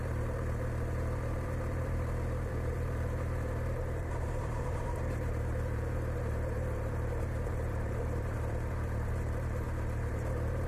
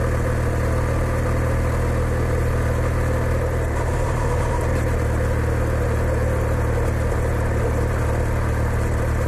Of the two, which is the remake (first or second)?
first